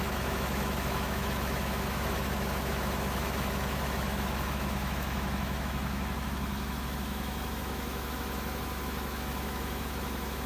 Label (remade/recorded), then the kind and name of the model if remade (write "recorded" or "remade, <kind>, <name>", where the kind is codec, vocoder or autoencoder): remade, autoencoder, DAC-VAE